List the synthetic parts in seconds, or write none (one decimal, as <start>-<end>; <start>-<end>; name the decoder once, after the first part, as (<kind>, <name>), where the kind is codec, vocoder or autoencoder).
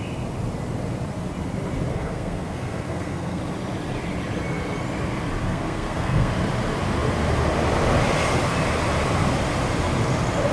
1.9-3.4 (codec, SNAC); 5.4-6.3